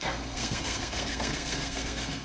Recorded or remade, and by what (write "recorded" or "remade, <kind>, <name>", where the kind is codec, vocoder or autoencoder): remade, codec, SNAC